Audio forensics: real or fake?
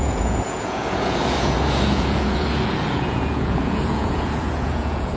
fake